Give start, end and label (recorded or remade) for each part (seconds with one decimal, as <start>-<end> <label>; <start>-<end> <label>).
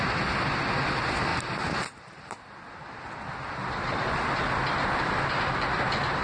0.0-6.2 recorded